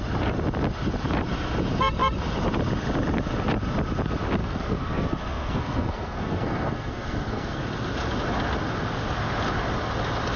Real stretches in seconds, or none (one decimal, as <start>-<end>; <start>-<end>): 0.0-4.4; 7.6-10.4